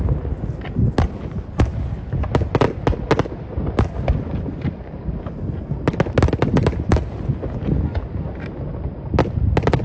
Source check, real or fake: real